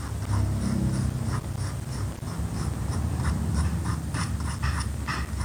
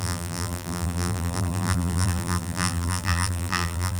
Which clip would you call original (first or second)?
first